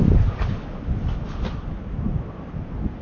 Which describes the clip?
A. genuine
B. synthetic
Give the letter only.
A